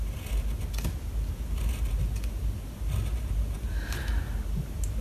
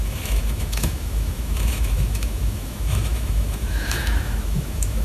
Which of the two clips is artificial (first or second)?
second